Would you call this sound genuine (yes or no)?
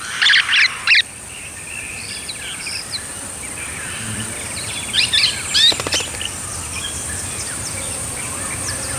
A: no